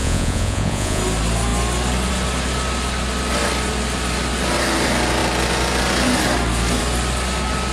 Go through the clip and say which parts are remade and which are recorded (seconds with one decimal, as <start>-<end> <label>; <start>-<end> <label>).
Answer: 0.0-1.0 remade; 1.0-7.7 recorded